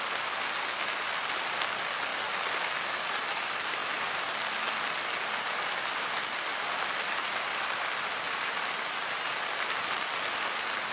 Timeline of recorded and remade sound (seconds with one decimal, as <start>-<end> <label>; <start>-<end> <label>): 0.0-10.9 recorded